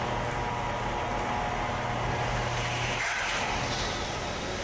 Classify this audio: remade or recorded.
recorded